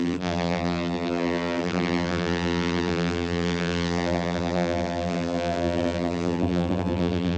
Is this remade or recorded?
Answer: remade